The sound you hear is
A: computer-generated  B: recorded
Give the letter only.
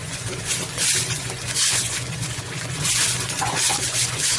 A